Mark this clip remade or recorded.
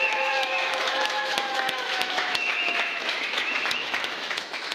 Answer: remade